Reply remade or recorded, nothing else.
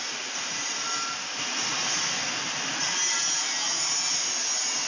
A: recorded